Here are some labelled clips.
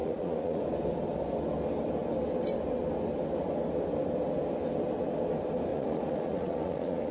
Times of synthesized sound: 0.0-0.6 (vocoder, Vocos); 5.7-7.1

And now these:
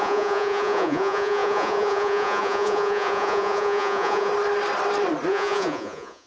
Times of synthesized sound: 0.0-4.3 (vocoder, Vocos); 5.3-6.3